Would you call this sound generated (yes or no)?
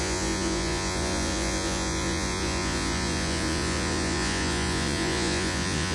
yes